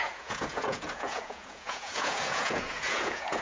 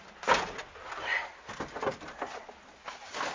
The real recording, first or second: second